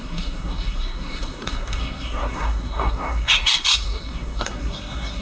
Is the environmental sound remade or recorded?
remade